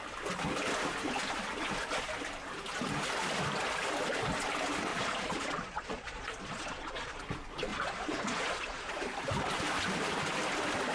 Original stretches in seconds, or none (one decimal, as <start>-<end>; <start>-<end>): 0.0-4.9; 7.2-7.7; 8.9-10.9